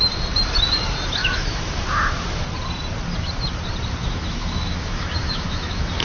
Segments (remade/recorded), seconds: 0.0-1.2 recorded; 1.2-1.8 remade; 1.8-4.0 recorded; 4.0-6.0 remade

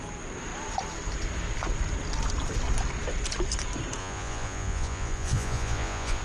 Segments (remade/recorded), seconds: 0.0-4.0 recorded; 4.0-6.2 remade

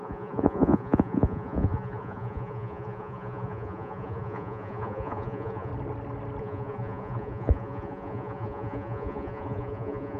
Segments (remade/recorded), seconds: 0.0-5.7 remade; 5.7-6.4 recorded; 6.4-10.2 remade

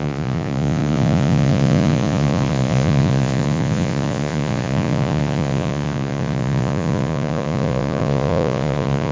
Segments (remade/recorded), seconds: 0.0-9.1 remade

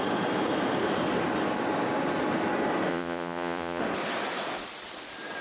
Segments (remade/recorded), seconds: 0.0-2.9 recorded; 2.9-3.8 remade; 3.8-5.4 recorded

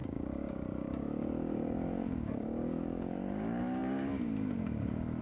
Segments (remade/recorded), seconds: 0.0-5.2 remade

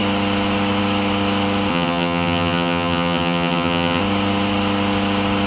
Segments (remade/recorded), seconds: 0.0-1.7 recorded; 1.7-4.0 remade; 4.0-5.5 recorded